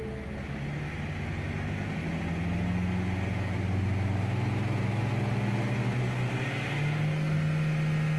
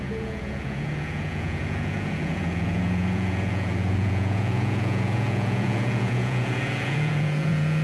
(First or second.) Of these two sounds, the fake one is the second